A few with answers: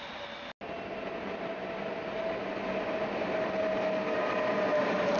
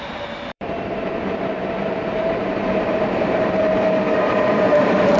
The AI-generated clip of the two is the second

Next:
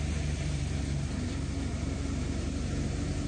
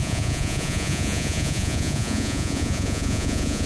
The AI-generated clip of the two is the second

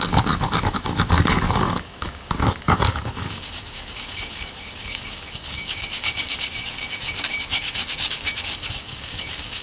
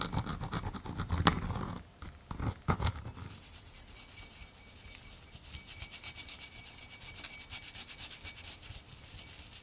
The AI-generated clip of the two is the first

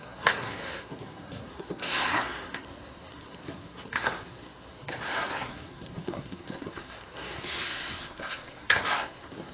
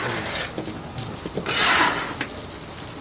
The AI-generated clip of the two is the first